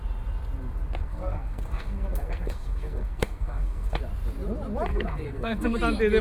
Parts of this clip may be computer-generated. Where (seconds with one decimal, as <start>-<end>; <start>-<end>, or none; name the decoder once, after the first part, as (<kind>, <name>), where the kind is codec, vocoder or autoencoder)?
1.0-4.0 (codec, SNAC); 4.9-5.8